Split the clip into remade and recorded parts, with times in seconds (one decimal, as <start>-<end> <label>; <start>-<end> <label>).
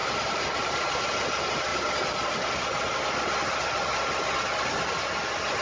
0.0-5.6 recorded